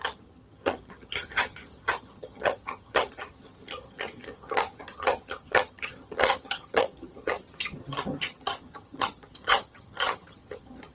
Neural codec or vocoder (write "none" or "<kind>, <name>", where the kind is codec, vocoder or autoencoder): vocoder, HiFi-GAN